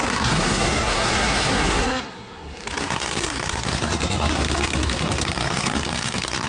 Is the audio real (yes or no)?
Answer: no